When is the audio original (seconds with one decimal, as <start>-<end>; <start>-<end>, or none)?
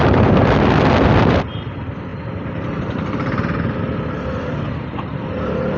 0.0-5.8